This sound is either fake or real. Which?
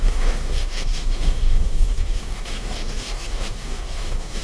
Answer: fake